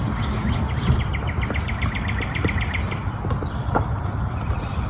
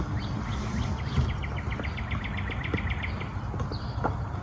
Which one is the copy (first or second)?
first